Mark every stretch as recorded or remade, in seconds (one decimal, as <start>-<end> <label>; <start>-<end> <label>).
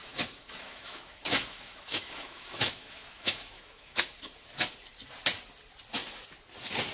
0.0-4.1 remade; 4.1-6.9 recorded